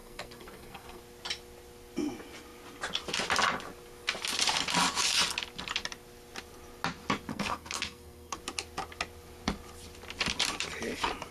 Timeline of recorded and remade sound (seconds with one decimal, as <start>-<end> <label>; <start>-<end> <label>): 0.0-1.0 remade; 1.0-7.3 recorded; 7.3-8.4 remade; 8.4-11.3 recorded